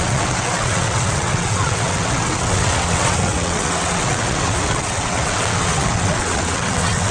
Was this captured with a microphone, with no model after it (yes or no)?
no